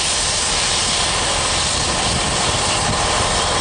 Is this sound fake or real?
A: fake